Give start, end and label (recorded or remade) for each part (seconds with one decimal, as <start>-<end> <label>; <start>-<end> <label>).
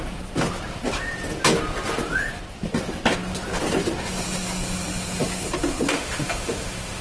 0.0-5.9 recorded; 5.9-7.0 remade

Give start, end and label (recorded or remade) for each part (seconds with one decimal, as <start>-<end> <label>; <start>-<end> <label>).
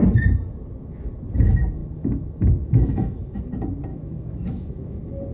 0.0-1.8 recorded; 1.8-3.4 remade; 3.4-3.9 recorded; 3.9-4.8 remade; 4.8-5.3 recorded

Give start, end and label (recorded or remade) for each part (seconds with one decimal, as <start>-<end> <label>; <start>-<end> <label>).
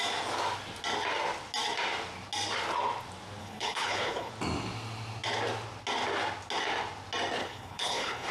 0.0-3.4 recorded; 3.4-4.3 remade; 4.3-7.4 recorded; 7.4-8.3 remade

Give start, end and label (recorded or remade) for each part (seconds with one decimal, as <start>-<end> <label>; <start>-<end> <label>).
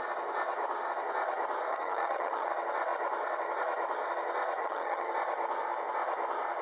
0.0-1.7 recorded; 1.7-2.5 remade; 2.5-4.6 recorded; 4.6-5.1 remade; 5.1-6.6 recorded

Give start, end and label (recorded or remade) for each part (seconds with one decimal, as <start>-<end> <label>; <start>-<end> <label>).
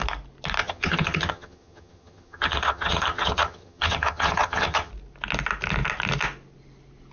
0.0-0.6 recorded; 0.6-4.9 remade; 4.9-7.1 recorded